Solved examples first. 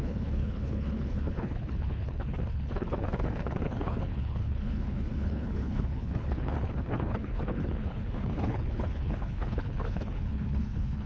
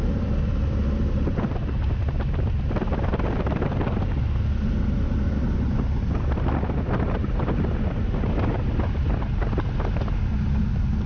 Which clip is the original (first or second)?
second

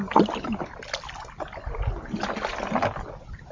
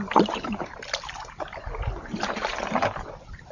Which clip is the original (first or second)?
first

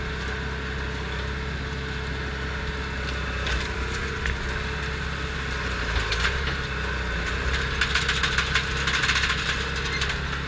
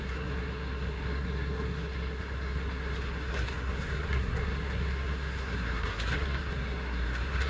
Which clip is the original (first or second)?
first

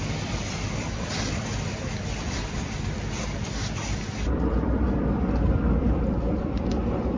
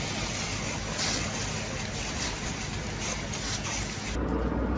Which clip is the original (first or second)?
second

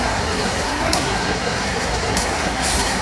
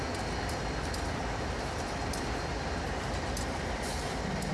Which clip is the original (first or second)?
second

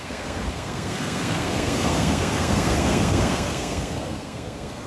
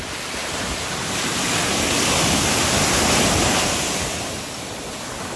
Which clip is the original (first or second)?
second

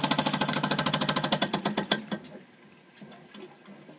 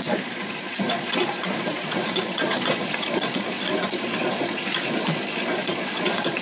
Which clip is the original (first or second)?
first